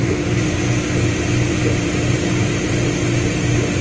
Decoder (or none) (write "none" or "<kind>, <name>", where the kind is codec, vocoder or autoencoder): vocoder, BigVGAN v2